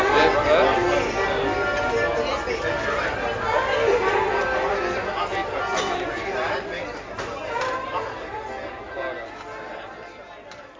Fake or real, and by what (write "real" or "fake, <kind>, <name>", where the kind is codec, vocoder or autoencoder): real